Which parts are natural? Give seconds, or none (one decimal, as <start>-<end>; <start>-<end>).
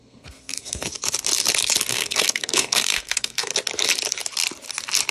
0.9-1.9; 3.5-5.1